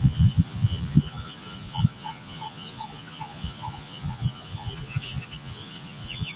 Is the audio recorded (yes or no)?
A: no